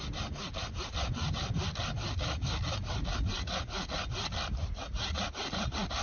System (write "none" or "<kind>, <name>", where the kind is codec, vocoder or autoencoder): none